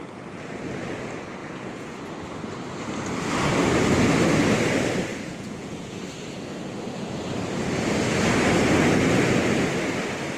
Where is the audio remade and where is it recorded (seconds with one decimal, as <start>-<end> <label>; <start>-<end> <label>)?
0.0-1.4 recorded; 1.4-2.0 remade; 2.0-5.1 recorded; 5.1-5.9 remade; 5.9-10.4 recorded